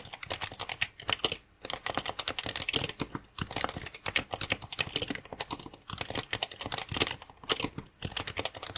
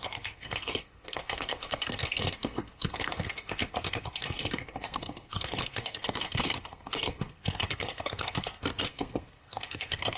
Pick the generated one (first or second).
second